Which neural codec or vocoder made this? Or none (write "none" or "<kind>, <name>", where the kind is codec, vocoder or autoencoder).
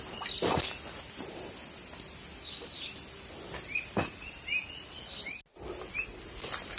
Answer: none